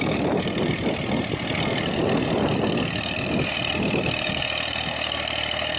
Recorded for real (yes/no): yes